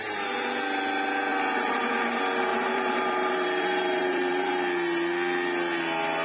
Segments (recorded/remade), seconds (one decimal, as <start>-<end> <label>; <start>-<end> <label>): 0.0-1.3 recorded; 1.3-1.9 remade; 1.9-2.5 recorded; 2.5-4.5 remade; 4.5-6.2 recorded